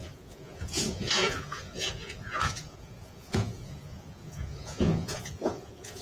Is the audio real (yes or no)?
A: no